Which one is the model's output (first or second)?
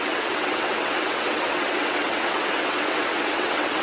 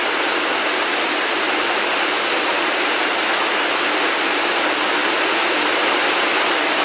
first